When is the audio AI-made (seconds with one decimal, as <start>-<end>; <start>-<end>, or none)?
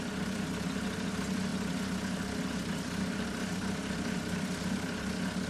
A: none